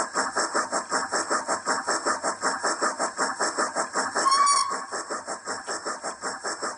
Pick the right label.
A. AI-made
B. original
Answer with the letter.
B